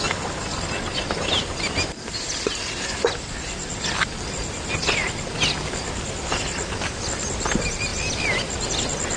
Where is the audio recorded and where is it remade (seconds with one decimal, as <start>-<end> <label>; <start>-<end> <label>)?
0.0-9.2 recorded